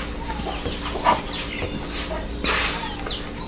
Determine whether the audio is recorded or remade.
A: recorded